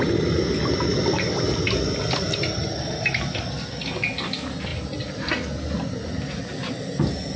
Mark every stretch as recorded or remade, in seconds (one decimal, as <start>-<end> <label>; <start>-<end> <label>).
0.0-7.4 recorded